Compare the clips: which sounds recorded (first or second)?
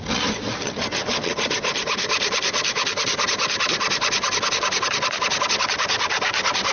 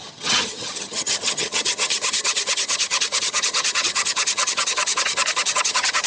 first